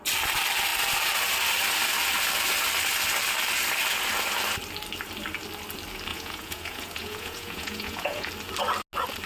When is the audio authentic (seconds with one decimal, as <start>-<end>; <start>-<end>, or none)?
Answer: 0.0-6.1; 8.3-9.3